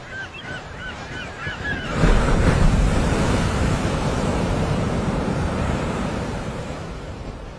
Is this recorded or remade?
remade